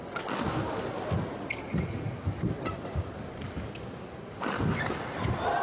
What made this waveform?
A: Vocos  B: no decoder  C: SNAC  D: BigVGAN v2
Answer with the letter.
B